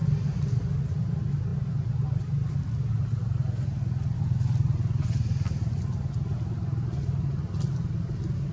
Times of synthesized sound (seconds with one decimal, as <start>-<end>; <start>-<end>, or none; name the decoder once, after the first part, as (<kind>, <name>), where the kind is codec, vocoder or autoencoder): none